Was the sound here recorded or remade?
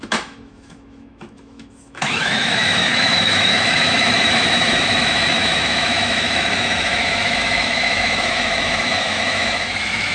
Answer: remade